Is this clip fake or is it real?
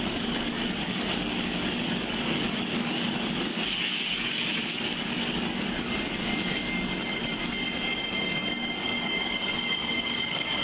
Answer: fake